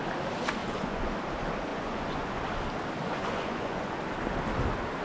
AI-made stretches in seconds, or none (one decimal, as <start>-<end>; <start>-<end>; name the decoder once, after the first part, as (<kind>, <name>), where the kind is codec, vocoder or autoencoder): 0.6-1.1 (vocoder, Vocos); 1.7-2.4; 3.0-4.0